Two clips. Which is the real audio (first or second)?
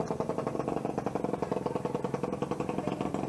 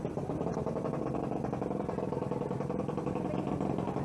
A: first